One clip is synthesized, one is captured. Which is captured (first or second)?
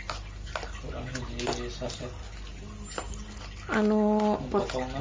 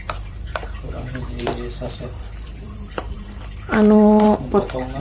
first